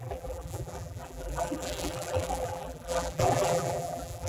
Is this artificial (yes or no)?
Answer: yes